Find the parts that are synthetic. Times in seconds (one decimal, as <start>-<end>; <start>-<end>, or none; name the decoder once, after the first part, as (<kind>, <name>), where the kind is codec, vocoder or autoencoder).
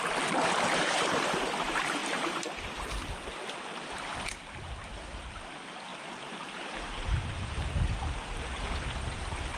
5.9-9.2 (vocoder, BigVGAN v2)